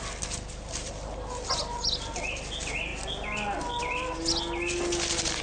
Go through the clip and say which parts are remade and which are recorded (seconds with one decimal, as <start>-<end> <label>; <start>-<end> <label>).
0.0-5.4 recorded